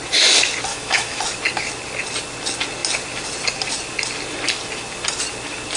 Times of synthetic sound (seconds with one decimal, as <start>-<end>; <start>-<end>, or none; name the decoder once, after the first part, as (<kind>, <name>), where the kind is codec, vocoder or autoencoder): 0.7-1.2 (autoencoder, DAC-VAE)